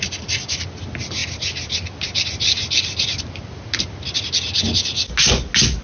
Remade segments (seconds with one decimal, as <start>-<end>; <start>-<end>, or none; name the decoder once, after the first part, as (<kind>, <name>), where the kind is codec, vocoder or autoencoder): none